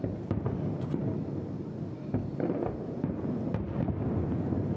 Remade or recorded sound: recorded